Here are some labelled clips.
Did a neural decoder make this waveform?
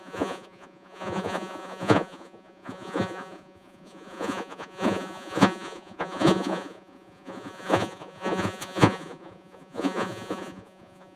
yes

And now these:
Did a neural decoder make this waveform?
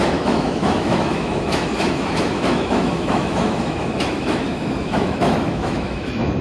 yes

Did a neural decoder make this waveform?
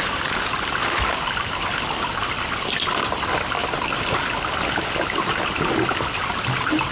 no